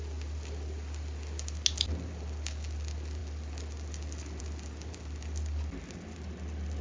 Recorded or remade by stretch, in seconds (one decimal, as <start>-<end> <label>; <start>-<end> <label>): 0.0-6.8 recorded